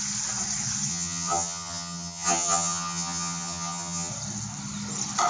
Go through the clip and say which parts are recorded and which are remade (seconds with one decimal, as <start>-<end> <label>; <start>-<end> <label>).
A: 0.0-0.9 recorded; 0.9-4.1 remade; 4.1-5.3 recorded